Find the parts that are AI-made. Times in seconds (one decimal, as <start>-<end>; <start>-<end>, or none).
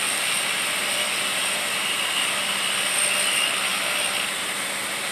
none